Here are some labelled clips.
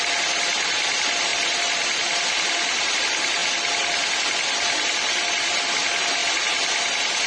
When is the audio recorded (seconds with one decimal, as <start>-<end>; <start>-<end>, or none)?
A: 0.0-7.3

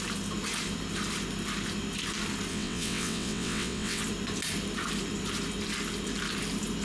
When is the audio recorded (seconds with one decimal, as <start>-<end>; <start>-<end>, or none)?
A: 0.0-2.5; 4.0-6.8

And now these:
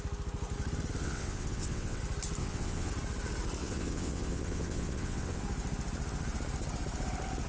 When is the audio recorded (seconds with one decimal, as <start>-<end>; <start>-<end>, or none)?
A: 0.0-1.0; 2.0-2.4; 2.9-3.6; 5.4-7.5